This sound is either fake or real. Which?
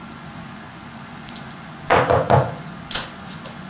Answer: fake